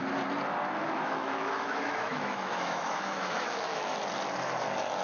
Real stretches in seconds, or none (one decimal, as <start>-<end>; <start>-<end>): 0.0-0.8; 3.8-5.0